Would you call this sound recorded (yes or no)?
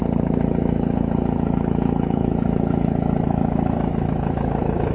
no